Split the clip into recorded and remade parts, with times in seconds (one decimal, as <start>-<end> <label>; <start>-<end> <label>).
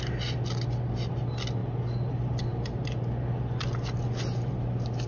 0.0-5.1 recorded